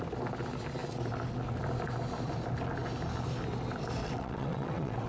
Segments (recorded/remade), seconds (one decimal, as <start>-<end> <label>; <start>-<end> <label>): 0.0-4.0 recorded; 4.0-5.1 remade